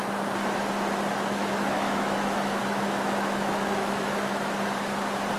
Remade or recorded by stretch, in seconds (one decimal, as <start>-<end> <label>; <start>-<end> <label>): 0.0-1.4 recorded; 1.4-4.6 remade; 4.6-5.4 recorded